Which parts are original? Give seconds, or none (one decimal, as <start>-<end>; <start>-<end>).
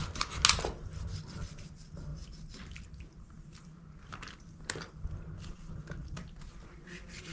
0.0-7.3